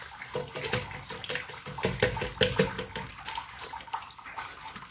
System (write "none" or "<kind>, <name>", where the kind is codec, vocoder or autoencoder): none